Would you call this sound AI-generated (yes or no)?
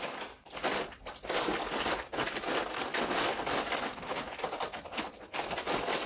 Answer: no